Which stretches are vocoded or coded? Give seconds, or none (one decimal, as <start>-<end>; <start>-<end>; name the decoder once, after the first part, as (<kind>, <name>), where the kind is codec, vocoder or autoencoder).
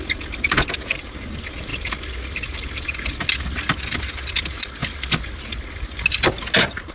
none